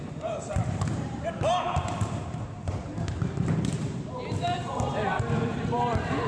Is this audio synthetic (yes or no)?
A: yes